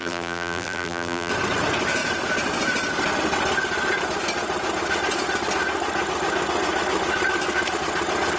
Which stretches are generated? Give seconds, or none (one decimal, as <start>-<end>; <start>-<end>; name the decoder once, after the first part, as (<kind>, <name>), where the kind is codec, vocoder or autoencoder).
0.0-1.3 (vocoder, BigVGAN v2)